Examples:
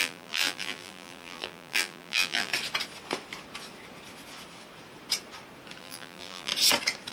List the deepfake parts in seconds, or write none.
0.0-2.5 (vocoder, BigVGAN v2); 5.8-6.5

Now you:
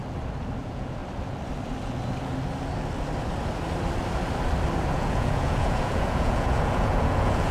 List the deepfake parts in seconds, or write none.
0.6-1.0 (vocoder, Vocos); 4.9-7.5

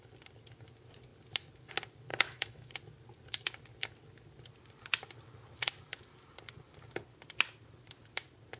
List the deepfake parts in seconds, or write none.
2.1-2.7 (autoencoder, DAC-VAE)